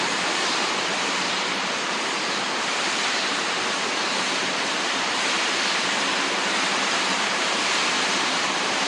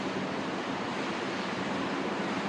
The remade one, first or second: first